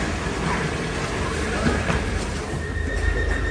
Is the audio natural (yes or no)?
yes